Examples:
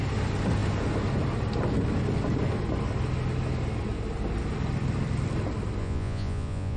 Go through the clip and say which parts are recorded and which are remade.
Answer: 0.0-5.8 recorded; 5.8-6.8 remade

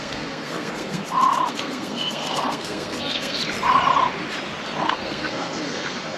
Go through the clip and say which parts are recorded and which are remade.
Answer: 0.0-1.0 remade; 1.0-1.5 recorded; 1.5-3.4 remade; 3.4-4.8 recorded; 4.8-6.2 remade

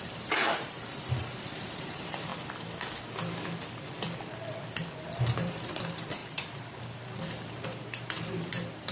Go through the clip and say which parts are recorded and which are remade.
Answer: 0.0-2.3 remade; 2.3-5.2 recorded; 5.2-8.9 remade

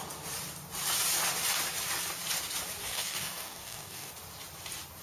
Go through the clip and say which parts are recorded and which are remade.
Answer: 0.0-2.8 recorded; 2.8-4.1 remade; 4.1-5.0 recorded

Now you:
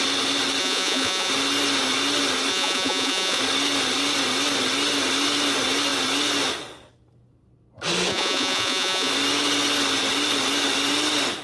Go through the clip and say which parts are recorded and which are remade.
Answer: 0.0-0.6 recorded; 0.6-1.3 remade; 1.3-2.5 recorded; 2.5-3.4 remade; 3.4-8.1 recorded; 8.1-9.1 remade; 9.1-11.4 recorded